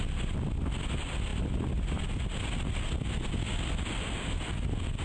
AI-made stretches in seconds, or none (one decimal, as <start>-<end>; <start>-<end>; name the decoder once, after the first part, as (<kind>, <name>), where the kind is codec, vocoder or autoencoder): none